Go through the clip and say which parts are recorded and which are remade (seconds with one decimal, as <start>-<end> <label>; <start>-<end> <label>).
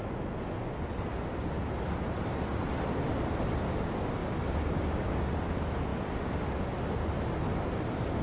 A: 0.0-4.2 recorded; 4.2-5.1 remade; 5.1-8.2 recorded